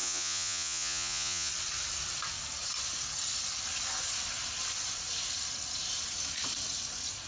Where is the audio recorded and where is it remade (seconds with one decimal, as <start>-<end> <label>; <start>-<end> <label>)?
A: 0.0-1.5 remade; 1.5-7.3 recorded